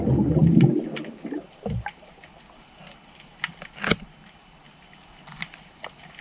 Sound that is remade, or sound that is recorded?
recorded